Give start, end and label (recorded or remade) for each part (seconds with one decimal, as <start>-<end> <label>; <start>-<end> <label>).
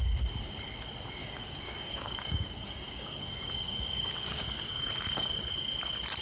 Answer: 0.0-1.2 recorded; 1.2-4.9 remade; 4.9-6.2 recorded